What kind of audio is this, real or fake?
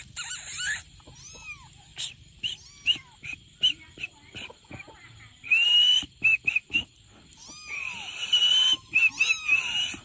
real